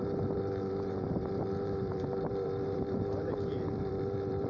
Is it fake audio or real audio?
fake